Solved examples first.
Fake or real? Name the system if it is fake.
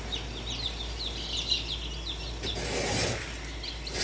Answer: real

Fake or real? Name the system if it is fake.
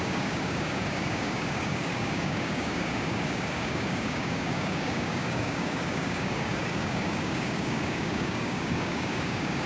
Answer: fake, codec, DAC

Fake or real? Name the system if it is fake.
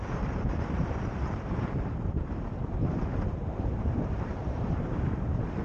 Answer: fake, vocoder, BigVGAN v2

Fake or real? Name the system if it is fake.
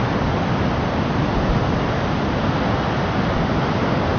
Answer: real